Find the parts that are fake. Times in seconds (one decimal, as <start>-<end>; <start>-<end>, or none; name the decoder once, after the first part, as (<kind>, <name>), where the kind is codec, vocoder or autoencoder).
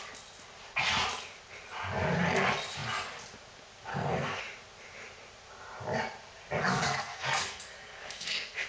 3.9-4.4 (codec, SNAC); 6.7-8.7